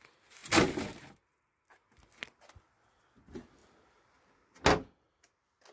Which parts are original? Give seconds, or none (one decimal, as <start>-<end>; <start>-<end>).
0.0-5.7